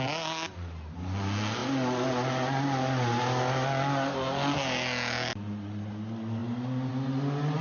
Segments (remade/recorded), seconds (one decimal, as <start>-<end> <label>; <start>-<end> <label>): 0.0-7.6 recorded